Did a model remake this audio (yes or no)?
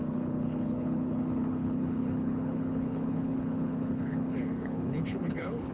yes